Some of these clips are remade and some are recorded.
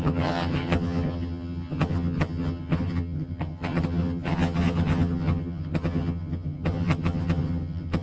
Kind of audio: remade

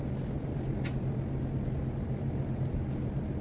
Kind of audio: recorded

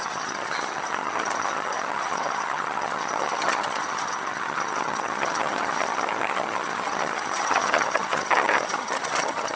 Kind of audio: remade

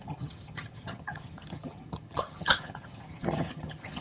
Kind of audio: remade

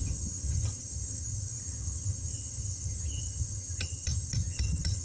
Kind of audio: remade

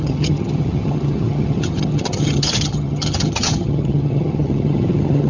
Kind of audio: remade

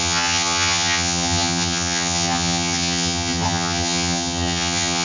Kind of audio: remade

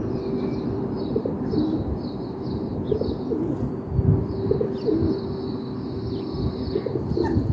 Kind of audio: recorded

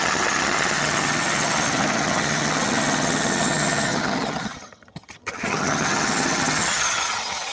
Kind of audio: remade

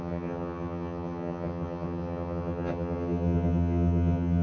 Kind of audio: remade